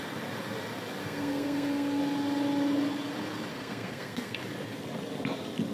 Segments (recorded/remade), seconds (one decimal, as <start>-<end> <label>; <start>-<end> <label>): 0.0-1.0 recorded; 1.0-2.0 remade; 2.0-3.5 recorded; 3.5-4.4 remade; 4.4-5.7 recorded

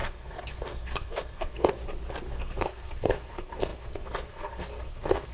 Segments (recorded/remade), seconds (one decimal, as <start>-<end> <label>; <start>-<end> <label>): 0.0-1.8 remade; 1.8-2.3 recorded; 2.3-5.3 remade

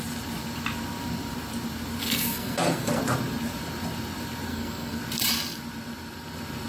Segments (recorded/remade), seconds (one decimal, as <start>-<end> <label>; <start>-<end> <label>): 0.0-2.0 recorded; 2.0-3.0 remade; 3.0-4.5 recorded; 4.5-5.0 remade; 5.0-6.7 recorded